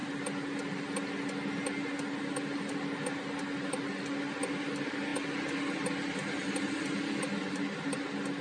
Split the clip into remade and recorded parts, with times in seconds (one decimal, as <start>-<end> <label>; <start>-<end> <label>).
0.0-8.4 recorded